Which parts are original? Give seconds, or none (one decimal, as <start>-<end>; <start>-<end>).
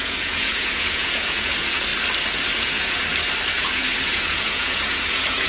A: 1.9-2.6; 3.0-3.5